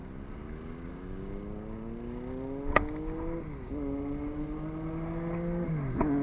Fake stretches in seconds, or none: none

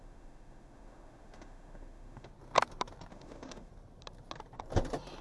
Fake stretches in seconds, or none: 0.0-2.3 (autoencoder, DAC-VAE); 3.1-3.7

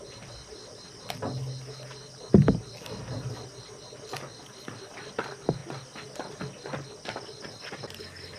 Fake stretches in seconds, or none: none